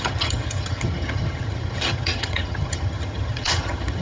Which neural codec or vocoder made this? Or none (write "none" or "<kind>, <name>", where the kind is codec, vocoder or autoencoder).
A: vocoder, HiFi-GAN